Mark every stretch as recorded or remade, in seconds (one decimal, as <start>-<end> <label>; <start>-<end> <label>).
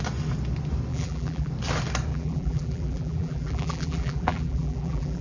0.0-0.9 recorded; 0.9-1.5 remade; 1.5-2.1 recorded; 2.1-5.2 remade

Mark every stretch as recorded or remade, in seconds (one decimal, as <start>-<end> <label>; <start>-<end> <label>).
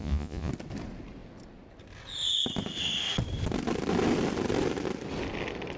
0.0-0.5 remade; 0.5-5.8 recorded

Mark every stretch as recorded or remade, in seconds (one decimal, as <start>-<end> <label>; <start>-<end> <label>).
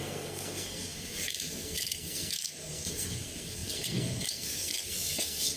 0.0-5.6 remade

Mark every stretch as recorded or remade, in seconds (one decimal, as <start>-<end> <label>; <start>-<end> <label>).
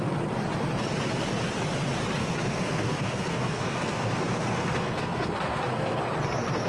0.0-2.2 recorded; 2.2-6.0 remade; 6.0-6.7 recorded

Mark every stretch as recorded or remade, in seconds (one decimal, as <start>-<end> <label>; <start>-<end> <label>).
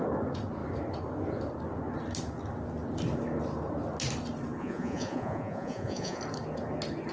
0.0-4.6 recorded; 4.6-6.2 remade; 6.2-7.1 recorded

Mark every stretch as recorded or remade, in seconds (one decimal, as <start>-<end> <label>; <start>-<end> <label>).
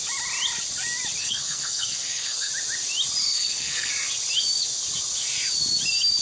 0.0-1.2 recorded; 1.2-2.5 remade; 2.5-3.2 recorded; 3.2-3.9 remade; 3.9-6.2 recorded